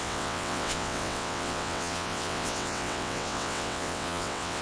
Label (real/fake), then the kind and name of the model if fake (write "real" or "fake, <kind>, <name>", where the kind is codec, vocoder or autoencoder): fake, vocoder, WaveNeXt